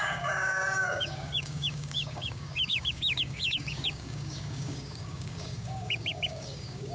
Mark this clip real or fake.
fake